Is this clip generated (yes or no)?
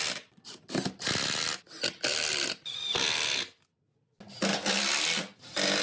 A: no